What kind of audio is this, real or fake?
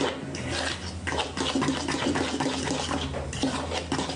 real